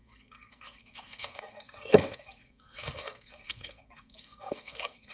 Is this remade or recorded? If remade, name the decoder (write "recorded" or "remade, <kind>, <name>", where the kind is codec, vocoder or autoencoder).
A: remade, codec, SNAC